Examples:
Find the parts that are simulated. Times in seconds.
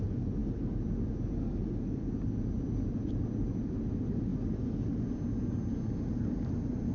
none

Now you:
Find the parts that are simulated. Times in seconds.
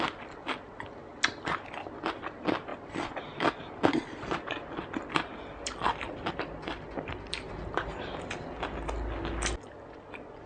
none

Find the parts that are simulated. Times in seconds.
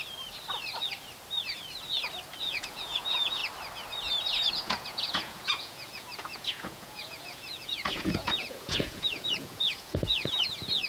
2.4-3.4 (vocoder, Vocos); 4.5-10.9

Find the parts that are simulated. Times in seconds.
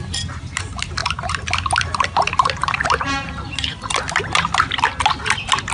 none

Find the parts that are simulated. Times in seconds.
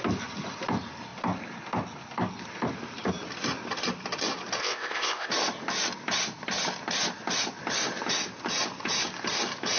4.6-5.3 (codec, ZipCodec)